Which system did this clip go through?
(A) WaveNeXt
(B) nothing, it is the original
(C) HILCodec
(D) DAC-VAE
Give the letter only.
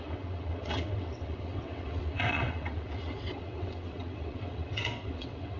A